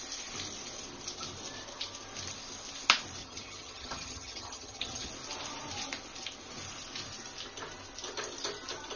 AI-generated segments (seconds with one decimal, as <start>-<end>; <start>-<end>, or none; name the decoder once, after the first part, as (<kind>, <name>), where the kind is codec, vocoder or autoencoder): 3.2-5.1 (vocoder, HiFi-GAN)